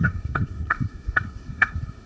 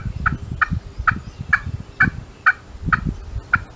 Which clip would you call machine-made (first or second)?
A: first